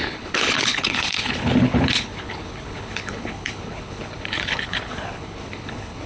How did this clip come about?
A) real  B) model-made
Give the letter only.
B